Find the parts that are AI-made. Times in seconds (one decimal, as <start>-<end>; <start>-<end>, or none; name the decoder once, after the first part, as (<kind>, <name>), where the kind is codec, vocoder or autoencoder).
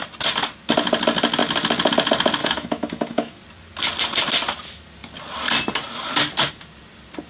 2.4-3.4 (autoencoder, DAC-VAE)